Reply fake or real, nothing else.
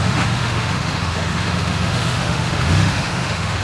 fake